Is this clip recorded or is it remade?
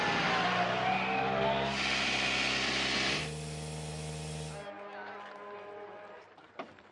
recorded